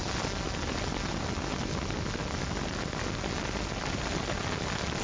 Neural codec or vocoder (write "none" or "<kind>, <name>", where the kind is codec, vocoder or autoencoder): none